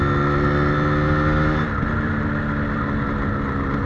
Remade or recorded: recorded